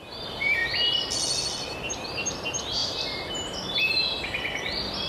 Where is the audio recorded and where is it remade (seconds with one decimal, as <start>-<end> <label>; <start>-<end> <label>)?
0.0-0.6 remade; 0.6-1.9 recorded; 1.9-5.1 remade